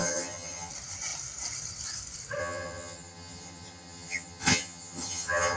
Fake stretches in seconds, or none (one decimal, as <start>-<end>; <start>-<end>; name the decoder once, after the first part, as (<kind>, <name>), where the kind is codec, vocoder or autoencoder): 0.0-0.7 (vocoder, HiFi-GAN); 2.4-5.6